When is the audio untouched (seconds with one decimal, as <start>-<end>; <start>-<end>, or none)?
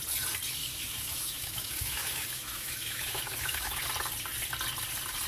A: 0.0-0.6; 3.8-5.3